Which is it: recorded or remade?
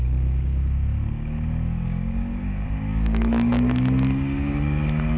remade